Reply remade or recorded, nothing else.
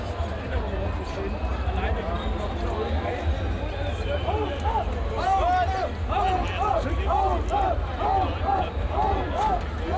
recorded